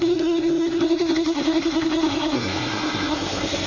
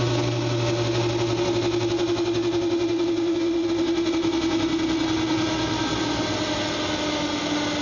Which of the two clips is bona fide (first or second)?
second